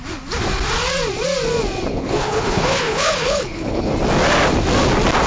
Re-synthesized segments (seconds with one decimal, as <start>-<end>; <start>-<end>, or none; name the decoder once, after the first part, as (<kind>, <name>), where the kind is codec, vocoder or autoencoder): 1.9-3.9 (codec, HILCodec)